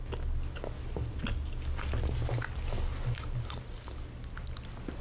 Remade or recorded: recorded